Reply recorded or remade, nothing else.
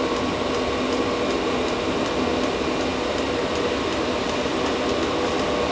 recorded